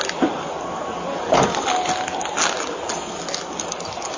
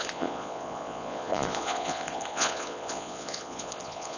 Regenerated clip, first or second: second